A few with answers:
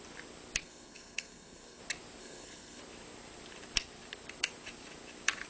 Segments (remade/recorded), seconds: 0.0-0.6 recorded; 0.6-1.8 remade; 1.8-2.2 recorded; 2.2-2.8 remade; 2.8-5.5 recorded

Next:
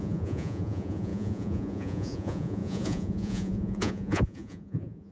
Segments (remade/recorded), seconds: 0.0-5.1 remade

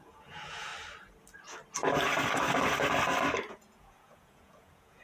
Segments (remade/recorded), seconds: 0.0-0.7 remade; 0.7-3.5 recorded; 3.5-5.0 remade